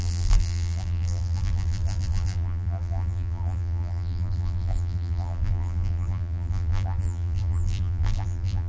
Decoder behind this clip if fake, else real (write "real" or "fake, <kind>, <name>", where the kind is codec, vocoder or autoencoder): fake, vocoder, BigVGAN v2